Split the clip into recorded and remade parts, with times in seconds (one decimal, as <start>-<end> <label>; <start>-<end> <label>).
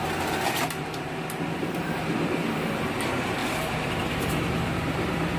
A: 0.0-1.6 recorded; 1.6-2.7 remade; 2.7-3.4 recorded; 3.4-4.4 remade; 4.4-5.4 recorded